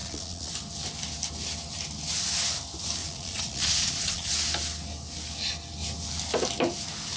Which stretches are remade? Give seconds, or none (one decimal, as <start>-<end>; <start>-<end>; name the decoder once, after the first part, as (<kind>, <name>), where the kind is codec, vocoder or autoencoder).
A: 0.0-0.5 (vocoder, Vocos); 3.0-4.3